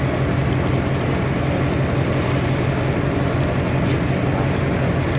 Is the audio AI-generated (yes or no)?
no